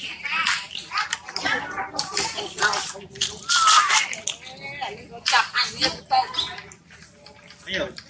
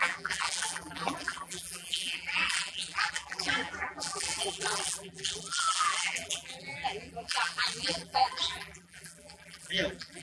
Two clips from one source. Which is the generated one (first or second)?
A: second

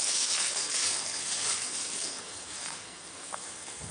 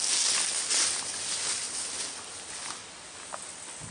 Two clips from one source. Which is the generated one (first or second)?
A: first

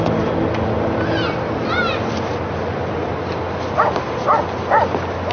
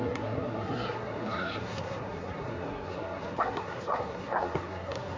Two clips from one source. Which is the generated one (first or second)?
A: second